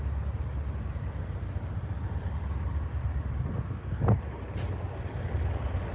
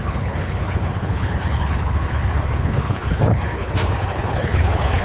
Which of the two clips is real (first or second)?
first